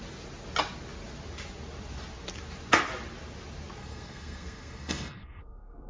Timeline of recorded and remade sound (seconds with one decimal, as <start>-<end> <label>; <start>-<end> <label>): 0.0-3.8 recorded; 3.8-5.9 remade